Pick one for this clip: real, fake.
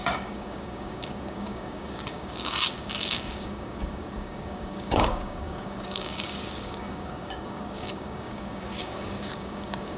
fake